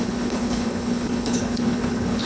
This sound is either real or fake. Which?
fake